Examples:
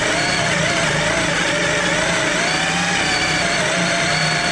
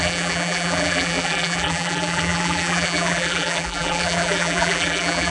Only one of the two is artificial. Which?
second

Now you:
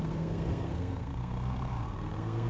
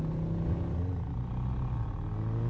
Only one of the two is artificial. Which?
first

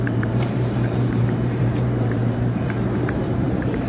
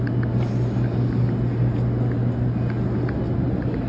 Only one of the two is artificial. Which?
first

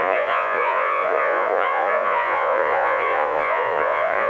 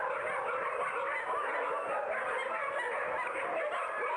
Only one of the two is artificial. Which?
first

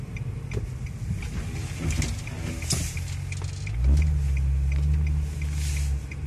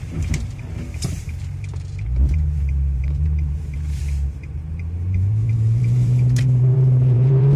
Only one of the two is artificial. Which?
second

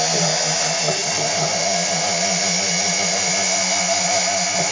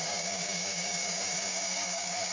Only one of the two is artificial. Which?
second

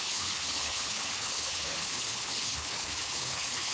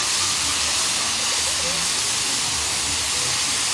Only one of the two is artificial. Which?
first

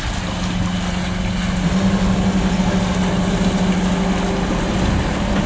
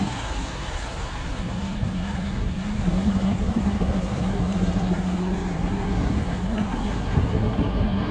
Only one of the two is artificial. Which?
second